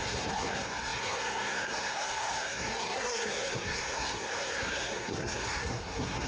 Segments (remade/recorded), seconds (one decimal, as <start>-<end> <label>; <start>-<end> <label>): 0.0-6.3 remade

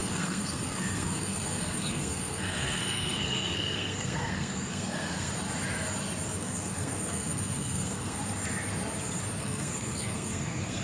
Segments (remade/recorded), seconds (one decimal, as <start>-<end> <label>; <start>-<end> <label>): 0.0-5.3 remade; 5.3-6.4 recorded; 6.4-8.2 remade; 8.2-9.4 recorded; 9.4-10.8 remade

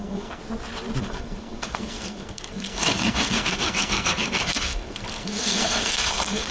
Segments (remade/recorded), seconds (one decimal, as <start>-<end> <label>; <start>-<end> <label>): 0.0-0.4 remade; 0.4-1.0 recorded; 1.0-6.5 remade

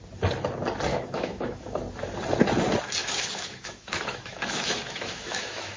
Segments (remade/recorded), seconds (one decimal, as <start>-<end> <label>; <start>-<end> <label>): 0.0-0.9 recorded; 0.9-1.8 remade; 1.8-3.0 recorded; 3.0-5.8 remade

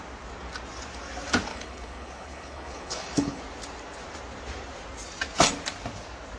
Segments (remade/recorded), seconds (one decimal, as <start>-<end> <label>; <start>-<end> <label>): 0.0-1.5 recorded; 1.5-3.4 remade; 3.4-6.4 recorded

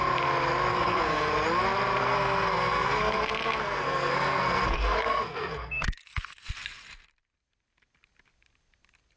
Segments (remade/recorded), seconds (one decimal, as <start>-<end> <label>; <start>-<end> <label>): 0.0-0.7 recorded; 0.7-1.3 remade; 1.3-2.0 recorded; 2.0-6.5 remade; 6.5-9.2 recorded

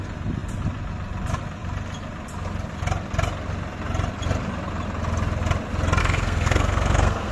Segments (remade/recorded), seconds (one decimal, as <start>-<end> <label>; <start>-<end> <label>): 0.0-6.0 recorded; 6.0-7.3 remade